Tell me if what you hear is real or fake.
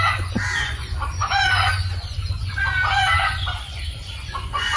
fake